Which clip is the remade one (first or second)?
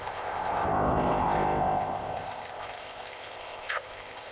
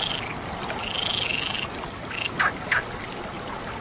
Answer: first